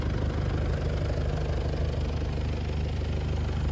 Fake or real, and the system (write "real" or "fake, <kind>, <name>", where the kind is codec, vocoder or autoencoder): real